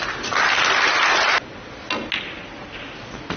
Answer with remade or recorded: recorded